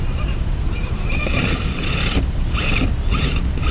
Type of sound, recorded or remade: remade